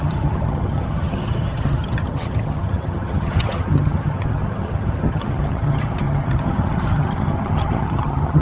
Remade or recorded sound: remade